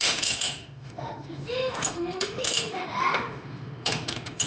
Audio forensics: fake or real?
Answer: fake